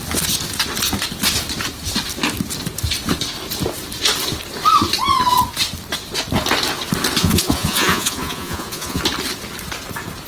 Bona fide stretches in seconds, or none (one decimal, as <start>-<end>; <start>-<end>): 0.0-7.2; 9.0-10.3